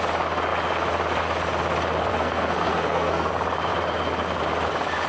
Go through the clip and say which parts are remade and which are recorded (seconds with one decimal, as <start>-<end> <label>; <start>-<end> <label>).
0.0-2.1 recorded; 2.1-3.3 remade; 3.3-5.1 recorded